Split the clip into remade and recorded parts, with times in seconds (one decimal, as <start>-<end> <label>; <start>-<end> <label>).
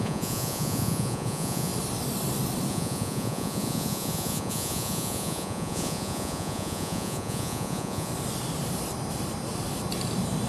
0.0-1.7 remade; 1.7-2.7 recorded; 2.7-8.1 remade; 8.1-10.5 recorded